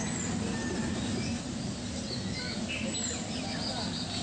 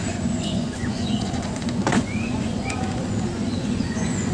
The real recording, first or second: first